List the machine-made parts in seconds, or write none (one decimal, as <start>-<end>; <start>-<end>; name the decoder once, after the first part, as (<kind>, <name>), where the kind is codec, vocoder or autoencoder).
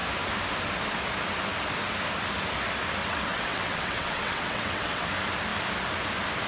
3.0-5.1 (vocoder, WaveNeXt)